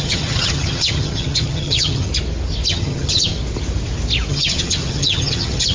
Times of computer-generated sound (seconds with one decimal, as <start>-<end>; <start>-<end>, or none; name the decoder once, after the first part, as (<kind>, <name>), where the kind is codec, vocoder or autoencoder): 0.0-2.1 (vocoder, HiFi-GAN); 2.7-3.3; 4.3-5.7